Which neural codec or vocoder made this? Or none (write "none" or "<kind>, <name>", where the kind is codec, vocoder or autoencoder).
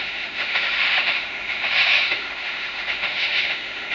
autoencoder, DAC-VAE